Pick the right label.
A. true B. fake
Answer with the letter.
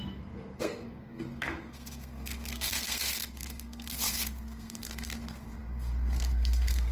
B